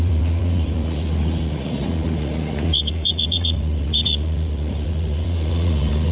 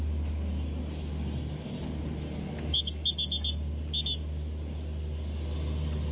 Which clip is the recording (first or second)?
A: second